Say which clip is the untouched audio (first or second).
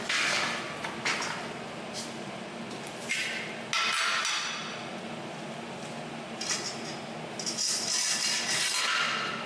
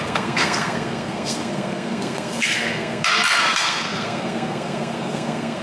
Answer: first